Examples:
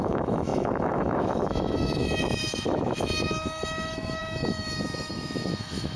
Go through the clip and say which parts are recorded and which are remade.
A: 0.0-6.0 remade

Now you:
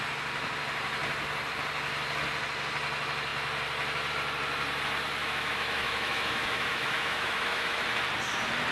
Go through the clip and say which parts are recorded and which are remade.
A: 0.0-5.2 recorded; 5.2-7.8 remade; 7.8-8.7 recorded

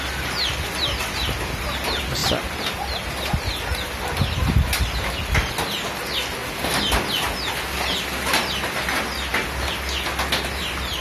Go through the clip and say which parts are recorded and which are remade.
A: 0.0-11.0 recorded

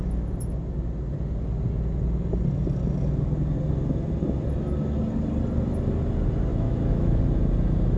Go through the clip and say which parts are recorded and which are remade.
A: 0.0-6.5 recorded; 6.5-7.2 remade; 7.2-8.0 recorded

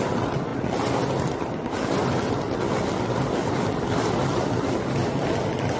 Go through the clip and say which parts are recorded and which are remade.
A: 0.0-5.8 recorded

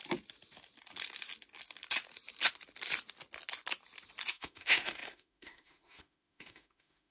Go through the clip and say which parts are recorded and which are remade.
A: 0.0-4.3 recorded; 4.3-7.1 remade

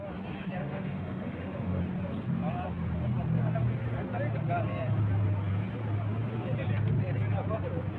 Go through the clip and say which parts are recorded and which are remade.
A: 0.0-0.6 recorded; 0.6-1.8 remade; 1.8-8.0 recorded

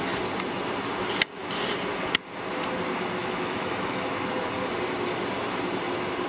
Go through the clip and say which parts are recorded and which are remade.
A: 0.0-3.2 recorded; 3.2-4.1 remade; 4.1-6.3 recorded